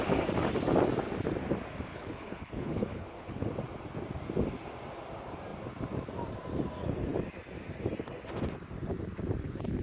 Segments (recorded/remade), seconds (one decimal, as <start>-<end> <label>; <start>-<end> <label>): 0.0-1.9 recorded; 1.9-3.5 remade; 3.5-9.8 recorded